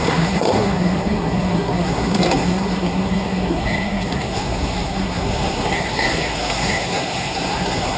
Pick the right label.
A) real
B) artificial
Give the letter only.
B